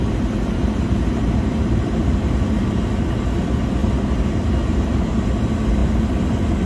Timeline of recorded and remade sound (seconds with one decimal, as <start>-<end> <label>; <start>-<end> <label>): 0.0-6.7 recorded